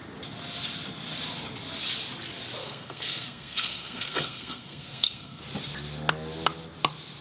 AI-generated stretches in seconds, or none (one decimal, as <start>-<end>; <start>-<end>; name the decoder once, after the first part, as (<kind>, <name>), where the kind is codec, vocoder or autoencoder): 2.6-5.4 (codec, SNAC)